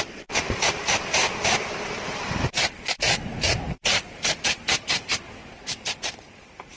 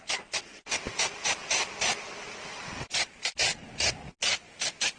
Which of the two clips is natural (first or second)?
second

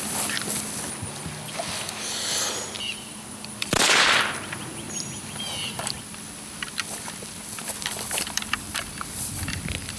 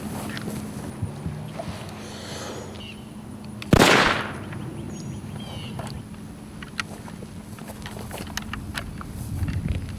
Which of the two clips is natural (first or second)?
second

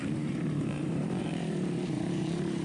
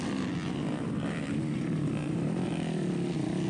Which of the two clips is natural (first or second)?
second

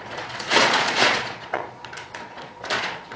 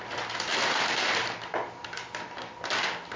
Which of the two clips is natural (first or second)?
second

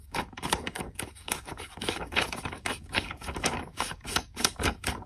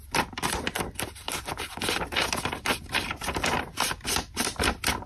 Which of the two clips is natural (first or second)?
second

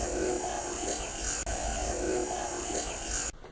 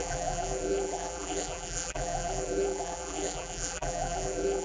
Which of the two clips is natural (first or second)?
first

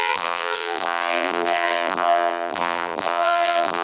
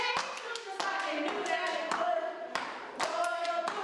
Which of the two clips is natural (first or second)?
second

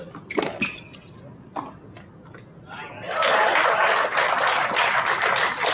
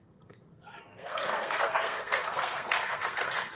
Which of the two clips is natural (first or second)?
first